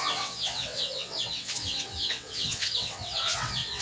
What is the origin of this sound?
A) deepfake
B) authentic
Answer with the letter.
A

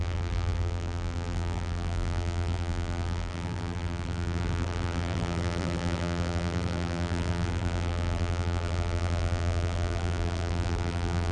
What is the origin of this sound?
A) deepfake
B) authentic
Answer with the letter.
A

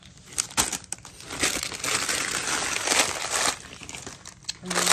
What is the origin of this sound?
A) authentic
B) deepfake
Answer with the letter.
A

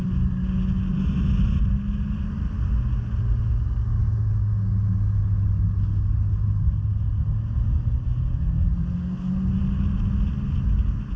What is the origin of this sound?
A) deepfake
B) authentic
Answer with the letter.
B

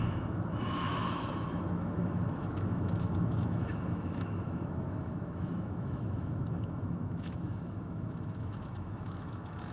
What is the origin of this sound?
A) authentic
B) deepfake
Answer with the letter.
B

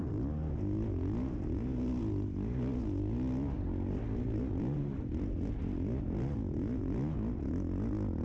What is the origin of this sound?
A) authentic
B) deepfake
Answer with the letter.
A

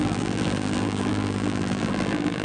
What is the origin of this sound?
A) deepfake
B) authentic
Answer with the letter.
A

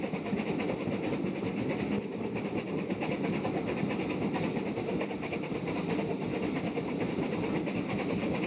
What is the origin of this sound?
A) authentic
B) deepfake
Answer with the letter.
A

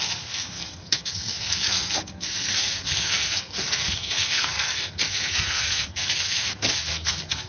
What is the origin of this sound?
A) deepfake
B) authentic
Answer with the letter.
A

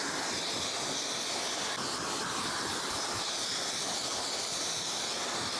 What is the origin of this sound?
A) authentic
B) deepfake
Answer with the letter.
A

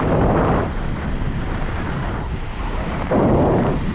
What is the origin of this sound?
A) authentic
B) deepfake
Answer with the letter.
B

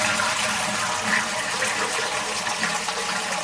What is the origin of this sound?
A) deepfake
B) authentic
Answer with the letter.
B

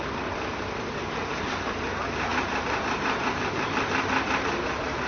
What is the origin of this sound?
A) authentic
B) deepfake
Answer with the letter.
B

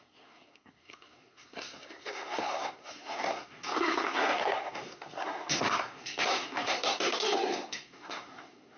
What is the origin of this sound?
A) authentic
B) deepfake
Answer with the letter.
B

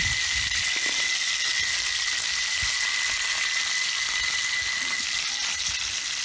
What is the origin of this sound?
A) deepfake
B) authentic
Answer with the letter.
B